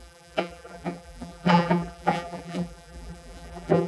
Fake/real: fake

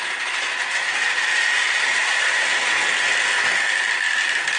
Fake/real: real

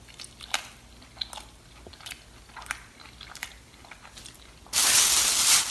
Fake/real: real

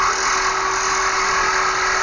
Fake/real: real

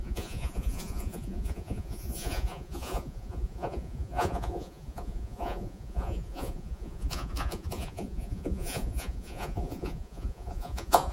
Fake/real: fake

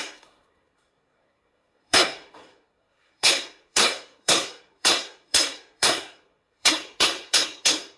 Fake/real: fake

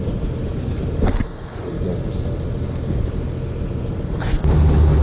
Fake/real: real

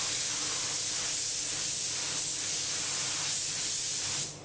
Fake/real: real